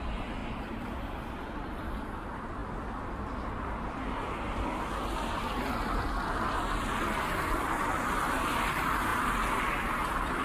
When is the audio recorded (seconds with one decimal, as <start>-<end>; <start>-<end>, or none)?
0.0-10.4